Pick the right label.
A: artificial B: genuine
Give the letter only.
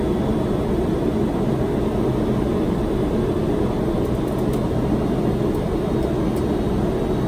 B